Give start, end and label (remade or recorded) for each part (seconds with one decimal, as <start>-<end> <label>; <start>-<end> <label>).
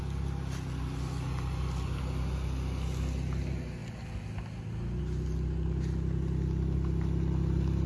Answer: 0.0-7.9 recorded